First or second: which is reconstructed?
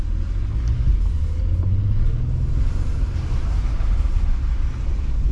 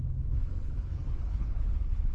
second